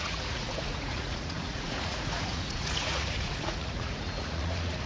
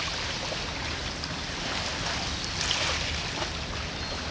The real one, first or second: second